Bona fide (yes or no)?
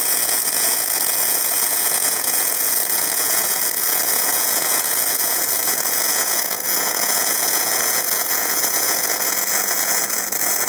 no